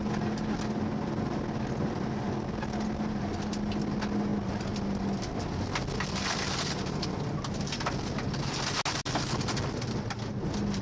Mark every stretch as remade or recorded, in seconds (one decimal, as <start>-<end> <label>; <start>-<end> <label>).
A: 0.0-10.8 recorded